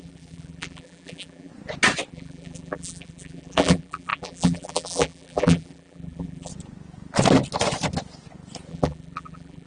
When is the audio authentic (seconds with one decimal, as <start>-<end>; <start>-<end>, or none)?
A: 1.5-2.1; 6.5-8.7